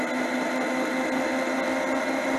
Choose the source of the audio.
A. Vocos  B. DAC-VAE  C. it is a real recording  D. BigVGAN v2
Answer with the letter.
C